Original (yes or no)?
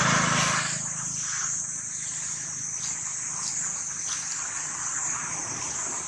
yes